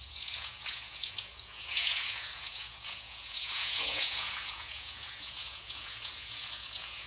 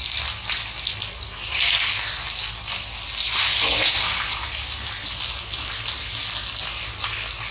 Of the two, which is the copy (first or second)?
first